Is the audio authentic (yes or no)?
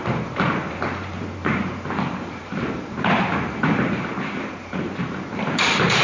no